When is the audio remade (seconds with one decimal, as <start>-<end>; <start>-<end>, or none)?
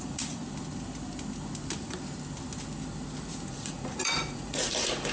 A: 0.0-0.4; 3.5-5.1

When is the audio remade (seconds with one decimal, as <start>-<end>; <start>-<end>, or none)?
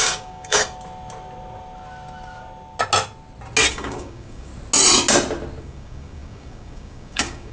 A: 0.0-0.6; 3.7-4.5; 5.6-7.5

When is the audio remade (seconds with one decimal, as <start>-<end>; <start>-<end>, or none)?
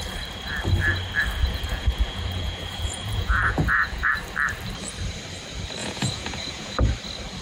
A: 1.4-4.1; 5.8-6.8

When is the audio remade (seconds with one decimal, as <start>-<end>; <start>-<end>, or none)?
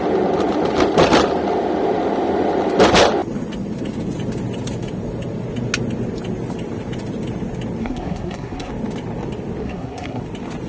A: 7.8-8.7; 9.6-10.2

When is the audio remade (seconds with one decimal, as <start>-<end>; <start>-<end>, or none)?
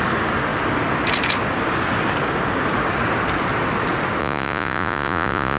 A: 4.2-5.6